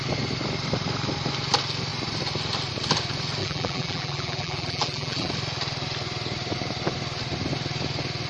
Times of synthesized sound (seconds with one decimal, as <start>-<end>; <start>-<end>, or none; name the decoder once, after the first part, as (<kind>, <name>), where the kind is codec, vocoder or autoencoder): 3.4-5.3 (vocoder, BigVGAN v2)